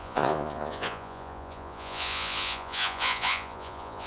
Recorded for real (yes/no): no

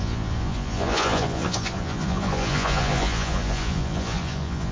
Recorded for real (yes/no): no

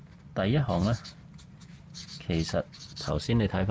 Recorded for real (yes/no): yes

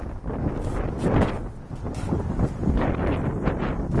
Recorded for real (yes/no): yes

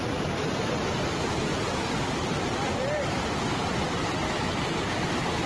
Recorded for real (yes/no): no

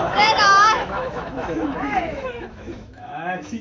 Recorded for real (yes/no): no